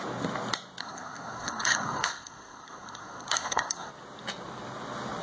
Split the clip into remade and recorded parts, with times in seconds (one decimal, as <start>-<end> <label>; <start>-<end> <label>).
0.0-0.8 recorded; 0.8-3.9 remade; 3.9-5.2 recorded